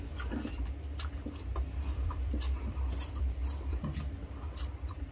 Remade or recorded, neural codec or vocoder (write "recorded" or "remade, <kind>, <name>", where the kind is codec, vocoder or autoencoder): remade, vocoder, BigVGAN v2